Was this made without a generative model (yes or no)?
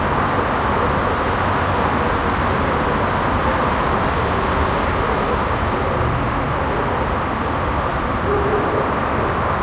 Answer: yes